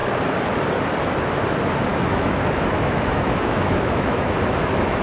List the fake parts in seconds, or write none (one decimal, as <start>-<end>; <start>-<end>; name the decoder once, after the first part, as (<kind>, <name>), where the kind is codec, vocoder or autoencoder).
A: 1.9-5.0 (autoencoder, DAC-VAE)